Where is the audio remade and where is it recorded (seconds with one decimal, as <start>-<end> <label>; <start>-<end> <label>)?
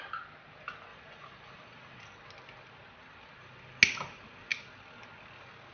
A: 0.0-0.9 recorded; 0.9-2.0 remade; 2.0-5.7 recorded